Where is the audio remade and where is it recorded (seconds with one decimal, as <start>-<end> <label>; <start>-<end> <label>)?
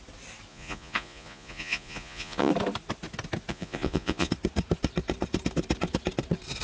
0.0-0.5 recorded; 0.5-2.5 remade; 2.5-3.5 recorded; 3.5-4.3 remade; 4.3-6.6 recorded